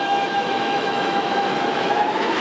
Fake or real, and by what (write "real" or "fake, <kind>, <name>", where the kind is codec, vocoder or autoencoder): fake, autoencoder, DAC-VAE